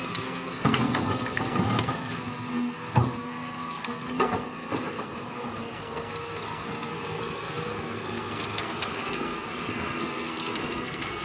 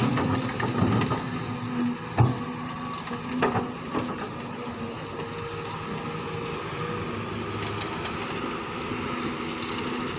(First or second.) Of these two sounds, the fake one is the first